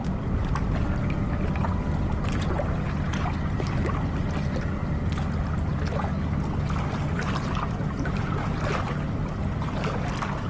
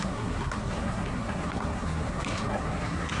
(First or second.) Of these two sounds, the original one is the first